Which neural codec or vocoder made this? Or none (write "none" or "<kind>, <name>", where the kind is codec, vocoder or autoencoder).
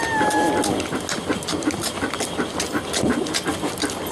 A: none